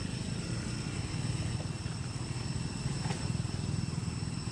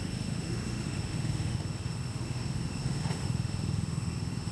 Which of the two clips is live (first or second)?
first